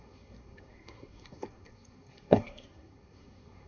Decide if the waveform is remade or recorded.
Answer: remade